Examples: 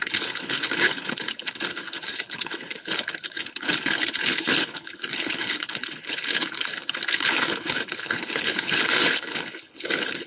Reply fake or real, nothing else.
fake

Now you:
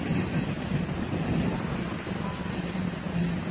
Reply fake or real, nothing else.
real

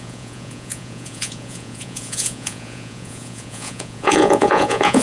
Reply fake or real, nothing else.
fake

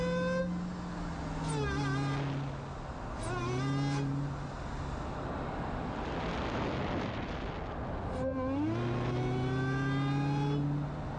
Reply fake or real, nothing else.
real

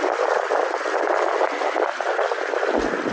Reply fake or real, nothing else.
real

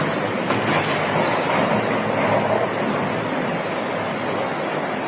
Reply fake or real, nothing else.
real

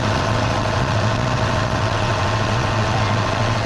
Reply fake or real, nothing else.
fake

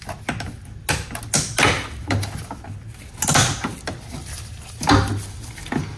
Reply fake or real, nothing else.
real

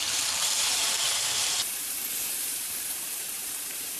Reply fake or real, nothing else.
fake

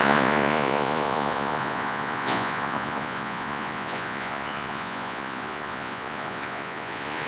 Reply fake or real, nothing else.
fake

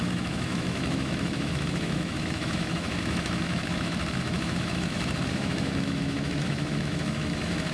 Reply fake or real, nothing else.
fake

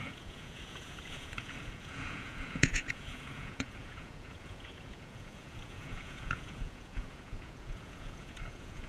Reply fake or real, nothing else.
fake